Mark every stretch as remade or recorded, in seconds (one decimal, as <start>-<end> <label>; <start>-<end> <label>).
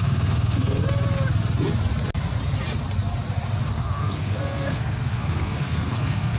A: 0.0-0.8 remade; 0.8-3.7 recorded; 3.7-6.4 remade